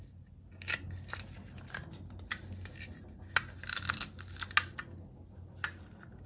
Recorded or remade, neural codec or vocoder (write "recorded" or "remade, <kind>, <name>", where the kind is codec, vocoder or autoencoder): recorded